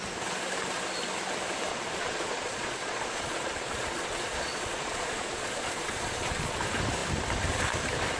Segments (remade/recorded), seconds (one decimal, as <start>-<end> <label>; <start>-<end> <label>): 0.0-1.7 recorded; 1.7-6.6 remade; 6.6-8.2 recorded